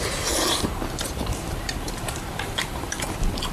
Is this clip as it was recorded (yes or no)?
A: no